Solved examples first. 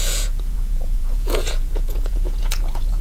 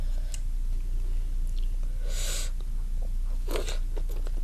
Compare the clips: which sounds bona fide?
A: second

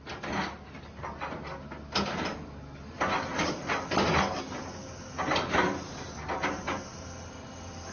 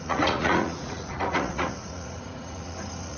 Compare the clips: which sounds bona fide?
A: first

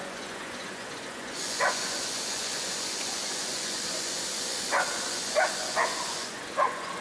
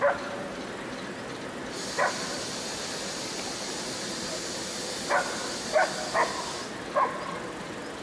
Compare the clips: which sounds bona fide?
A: second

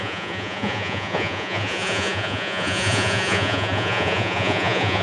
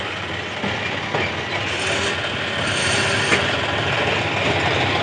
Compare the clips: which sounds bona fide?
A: second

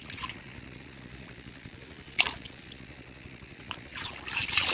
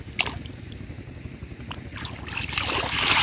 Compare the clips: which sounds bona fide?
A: second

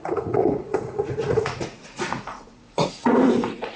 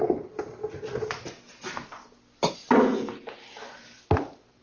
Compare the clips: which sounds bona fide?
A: second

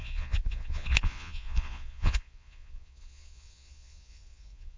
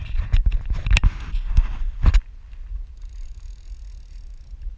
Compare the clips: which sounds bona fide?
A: second